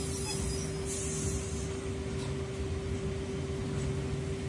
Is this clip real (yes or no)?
yes